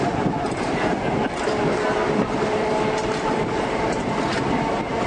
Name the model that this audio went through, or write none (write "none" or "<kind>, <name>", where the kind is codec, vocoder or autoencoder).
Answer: none